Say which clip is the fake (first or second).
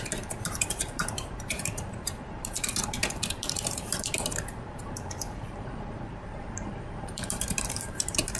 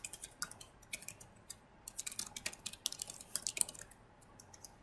first